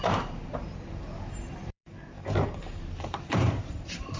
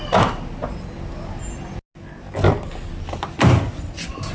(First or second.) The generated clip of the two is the first